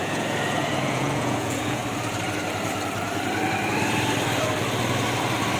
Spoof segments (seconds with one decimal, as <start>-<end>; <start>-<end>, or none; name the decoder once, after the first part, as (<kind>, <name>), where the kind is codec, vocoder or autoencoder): 0.0-1.8 (vocoder, Vocos)